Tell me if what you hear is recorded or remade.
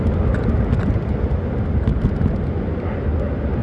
recorded